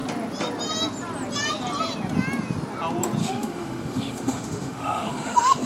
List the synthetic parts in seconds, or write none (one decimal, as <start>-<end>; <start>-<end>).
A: 3.2-5.7